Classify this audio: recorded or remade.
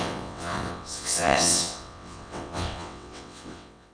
remade